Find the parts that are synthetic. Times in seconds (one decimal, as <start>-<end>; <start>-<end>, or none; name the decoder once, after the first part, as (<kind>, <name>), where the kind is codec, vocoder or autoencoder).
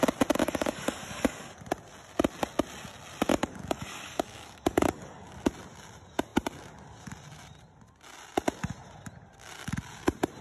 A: 0.4-1.6 (codec, DAC); 3.3-5.5